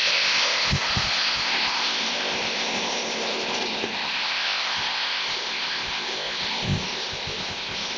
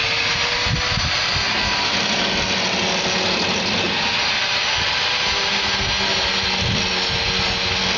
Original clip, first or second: second